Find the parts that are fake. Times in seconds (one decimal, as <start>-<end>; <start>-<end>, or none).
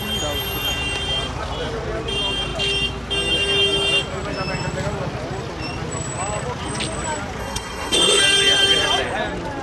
7.4-8.2